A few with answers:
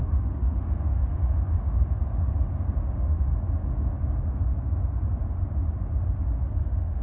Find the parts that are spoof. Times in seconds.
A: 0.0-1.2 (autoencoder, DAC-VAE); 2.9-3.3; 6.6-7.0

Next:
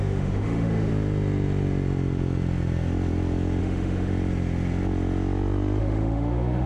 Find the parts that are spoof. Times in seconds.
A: 0.0-0.9 (autoencoder, DAC-VAE); 3.6-4.1; 5.8-6.7

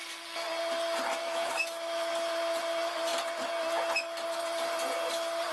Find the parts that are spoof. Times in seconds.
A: 1.2-2.1 (autoencoder, DAC-VAE)

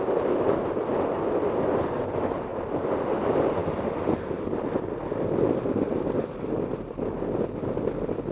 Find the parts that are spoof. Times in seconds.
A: none

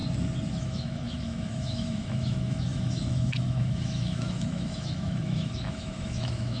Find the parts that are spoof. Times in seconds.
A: 0.5-6.6 (autoencoder, DAC-VAE)

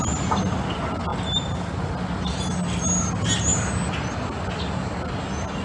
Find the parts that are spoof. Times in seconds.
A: none

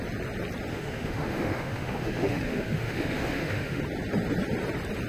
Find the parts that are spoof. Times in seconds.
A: 0.7-3.8 (autoencoder, DAC-VAE)

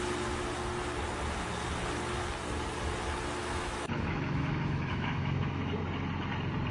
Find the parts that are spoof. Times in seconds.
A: 3.4-5.7 (autoencoder, DAC-VAE)